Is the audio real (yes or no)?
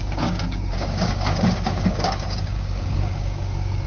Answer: no